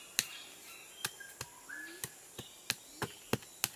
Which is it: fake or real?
real